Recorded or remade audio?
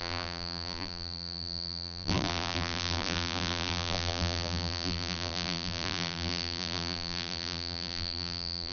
remade